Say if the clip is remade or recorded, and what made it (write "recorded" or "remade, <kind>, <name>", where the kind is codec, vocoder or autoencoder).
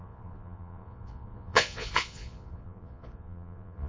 remade, vocoder, Vocos